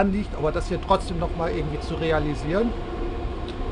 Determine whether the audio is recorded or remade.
recorded